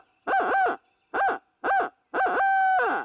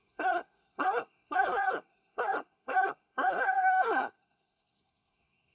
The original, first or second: first